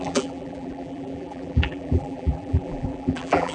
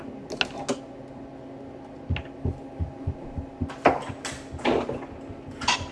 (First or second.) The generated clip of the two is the first